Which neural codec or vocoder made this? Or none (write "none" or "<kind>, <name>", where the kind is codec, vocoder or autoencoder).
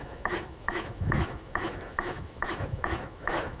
autoencoder, DAC-VAE